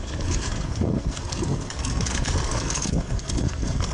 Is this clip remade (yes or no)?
yes